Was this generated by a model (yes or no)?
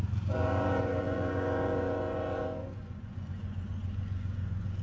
yes